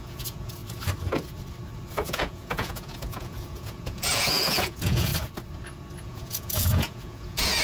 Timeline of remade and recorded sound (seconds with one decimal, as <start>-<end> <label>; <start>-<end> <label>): 0.0-0.6 remade; 0.6-1.9 recorded; 1.9-5.1 remade; 5.1-6.0 recorded; 6.0-7.6 remade